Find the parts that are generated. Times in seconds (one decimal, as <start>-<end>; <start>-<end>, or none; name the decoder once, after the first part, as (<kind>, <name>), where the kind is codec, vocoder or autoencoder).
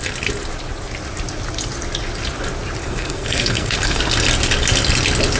2.8-4.0 (codec, SNAC)